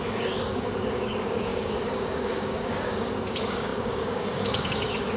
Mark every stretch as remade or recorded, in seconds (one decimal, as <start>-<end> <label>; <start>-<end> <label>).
0.0-5.2 remade